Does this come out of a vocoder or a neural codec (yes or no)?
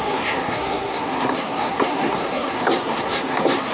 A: yes